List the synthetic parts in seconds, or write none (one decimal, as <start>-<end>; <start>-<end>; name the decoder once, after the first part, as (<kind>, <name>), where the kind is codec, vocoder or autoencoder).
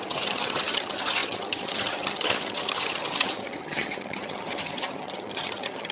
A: 0.0-5.9 (vocoder, HiFi-GAN)